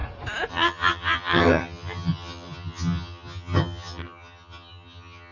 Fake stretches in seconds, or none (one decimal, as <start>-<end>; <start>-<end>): 0.5-5.3